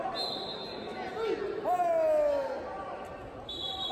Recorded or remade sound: recorded